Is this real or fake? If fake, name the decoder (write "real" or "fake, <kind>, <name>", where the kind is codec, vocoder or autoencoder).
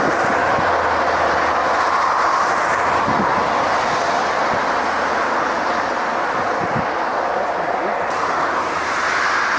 real